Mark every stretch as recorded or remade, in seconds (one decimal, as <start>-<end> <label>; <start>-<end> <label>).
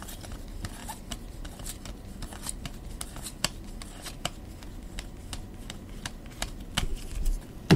0.0-7.8 recorded